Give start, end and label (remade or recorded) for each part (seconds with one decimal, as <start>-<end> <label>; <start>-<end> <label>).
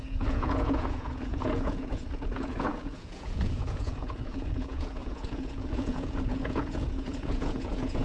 0.0-8.0 remade